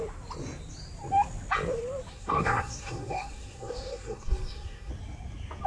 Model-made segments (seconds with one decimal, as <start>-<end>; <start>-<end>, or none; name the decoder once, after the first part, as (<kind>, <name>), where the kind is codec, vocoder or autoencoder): 2.1-4.9 (codec, SNAC)